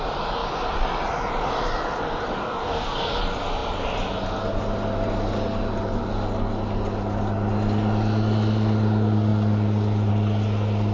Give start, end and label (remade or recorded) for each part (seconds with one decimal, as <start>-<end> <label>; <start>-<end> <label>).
0.0-2.3 recorded; 2.3-3.0 remade; 3.0-10.9 recorded